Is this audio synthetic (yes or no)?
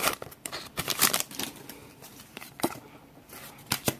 yes